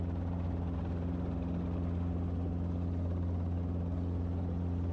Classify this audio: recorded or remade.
recorded